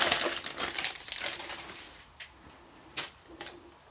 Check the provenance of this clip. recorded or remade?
recorded